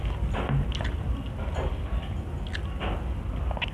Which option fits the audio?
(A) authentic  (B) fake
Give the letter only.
A